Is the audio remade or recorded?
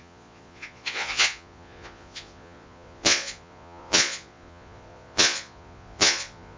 remade